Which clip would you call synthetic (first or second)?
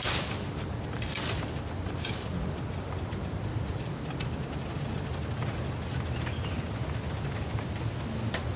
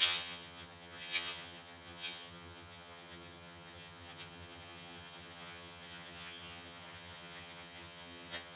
second